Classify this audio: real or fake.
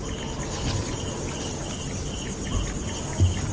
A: real